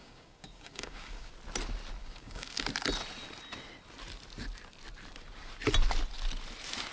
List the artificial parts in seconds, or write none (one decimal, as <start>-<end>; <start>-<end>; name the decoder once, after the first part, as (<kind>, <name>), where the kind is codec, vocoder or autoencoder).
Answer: 0.0-1.3 (codec, DAC); 2.0-2.6